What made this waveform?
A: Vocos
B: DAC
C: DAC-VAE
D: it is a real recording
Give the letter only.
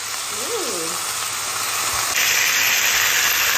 D